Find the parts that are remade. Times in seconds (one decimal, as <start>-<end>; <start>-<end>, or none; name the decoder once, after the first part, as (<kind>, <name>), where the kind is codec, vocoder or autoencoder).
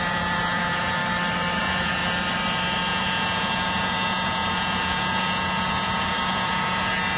0.0-1.0 (vocoder, Vocos); 1.6-2.0; 2.9-7.2